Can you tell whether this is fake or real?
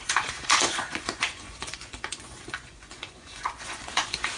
fake